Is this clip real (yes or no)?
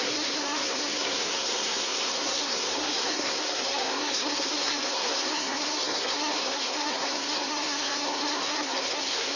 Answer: no